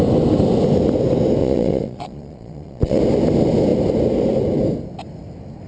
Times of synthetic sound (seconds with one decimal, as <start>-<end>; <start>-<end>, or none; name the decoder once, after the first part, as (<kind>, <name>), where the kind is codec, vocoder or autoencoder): 1.4-3.0 (vocoder, Vocos)